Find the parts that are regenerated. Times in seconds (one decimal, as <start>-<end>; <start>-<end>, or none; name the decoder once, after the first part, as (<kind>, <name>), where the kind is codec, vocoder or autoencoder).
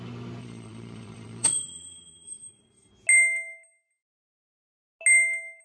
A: 0.4-2.9 (vocoder, Vocos)